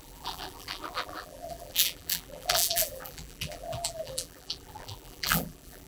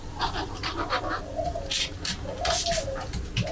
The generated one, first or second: first